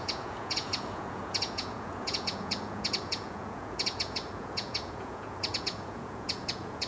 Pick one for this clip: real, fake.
fake